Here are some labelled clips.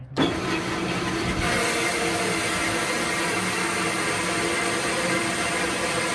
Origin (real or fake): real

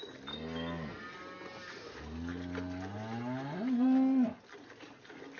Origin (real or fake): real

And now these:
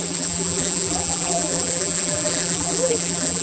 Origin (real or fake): fake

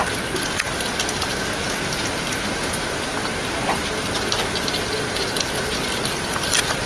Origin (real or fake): real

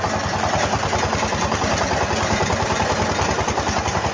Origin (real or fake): real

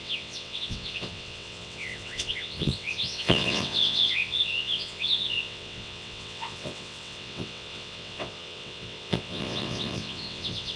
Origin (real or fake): fake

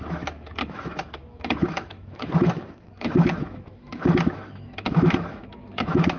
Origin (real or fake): fake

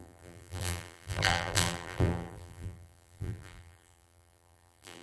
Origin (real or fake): fake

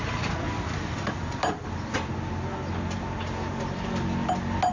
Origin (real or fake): real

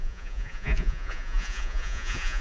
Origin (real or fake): fake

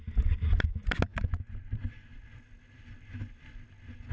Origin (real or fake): real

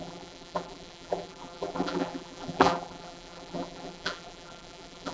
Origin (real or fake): fake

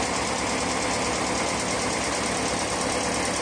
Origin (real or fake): real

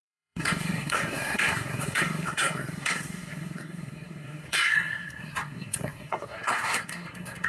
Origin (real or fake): fake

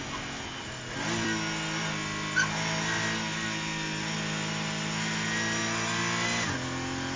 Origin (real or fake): real